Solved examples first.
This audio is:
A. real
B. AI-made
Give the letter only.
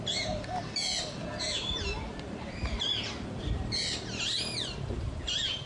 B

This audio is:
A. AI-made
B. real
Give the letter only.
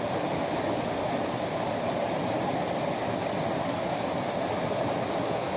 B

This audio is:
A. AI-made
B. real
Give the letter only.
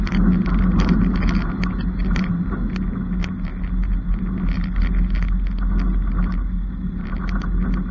B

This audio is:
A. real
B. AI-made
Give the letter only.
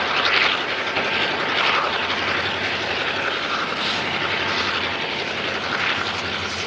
A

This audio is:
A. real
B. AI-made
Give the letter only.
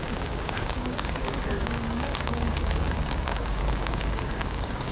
B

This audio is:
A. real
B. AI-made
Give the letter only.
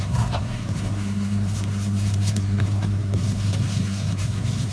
B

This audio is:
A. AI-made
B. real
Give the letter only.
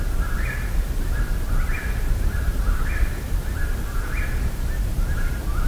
B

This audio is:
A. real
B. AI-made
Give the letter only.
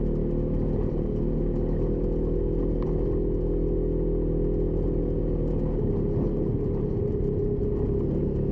A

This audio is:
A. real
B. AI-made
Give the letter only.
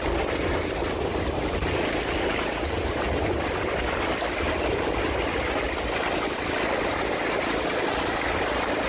A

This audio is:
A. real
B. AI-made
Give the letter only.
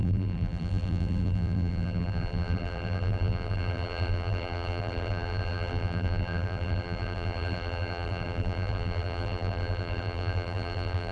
B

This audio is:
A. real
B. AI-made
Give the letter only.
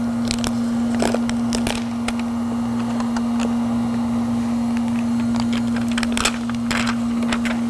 A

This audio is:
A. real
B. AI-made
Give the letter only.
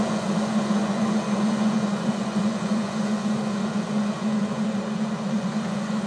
B